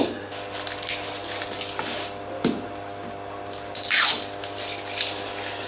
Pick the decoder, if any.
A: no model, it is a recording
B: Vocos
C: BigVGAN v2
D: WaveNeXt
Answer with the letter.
A